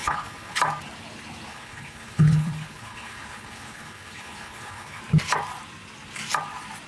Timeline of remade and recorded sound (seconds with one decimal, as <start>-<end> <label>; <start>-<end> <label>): 0.0-0.6 remade; 0.6-1.5 recorded; 1.5-5.0 remade; 5.0-6.9 recorded